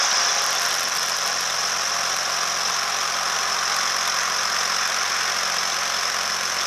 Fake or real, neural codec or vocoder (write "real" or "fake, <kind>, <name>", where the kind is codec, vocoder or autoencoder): real